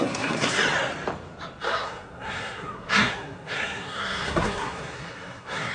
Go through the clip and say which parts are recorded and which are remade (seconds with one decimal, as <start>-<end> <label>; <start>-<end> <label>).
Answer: 0.0-0.6 remade; 0.6-1.6 recorded; 1.6-5.7 remade